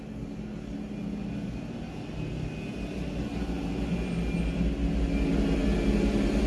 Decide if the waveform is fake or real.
real